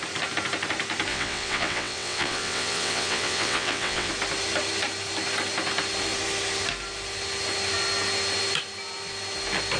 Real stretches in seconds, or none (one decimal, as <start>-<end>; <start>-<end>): 0.0-1.1; 4.1-9.8